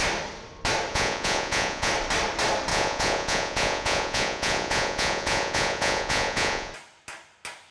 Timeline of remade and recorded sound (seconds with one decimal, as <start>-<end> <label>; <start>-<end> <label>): 0.0-0.9 recorded; 0.9-1.9 remade; 1.9-2.7 recorded; 2.7-6.7 remade; 6.7-7.7 recorded